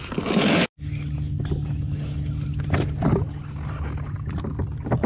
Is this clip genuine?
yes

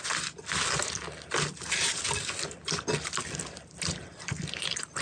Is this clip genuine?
yes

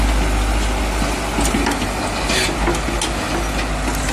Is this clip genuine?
yes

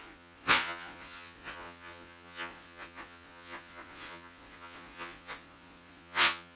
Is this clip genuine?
no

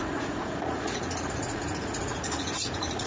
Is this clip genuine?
no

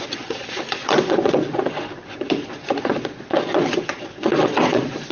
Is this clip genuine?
no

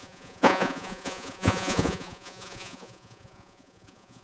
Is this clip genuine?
no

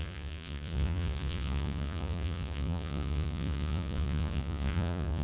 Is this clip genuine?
no